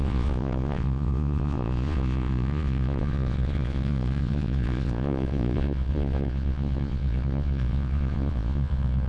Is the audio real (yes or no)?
no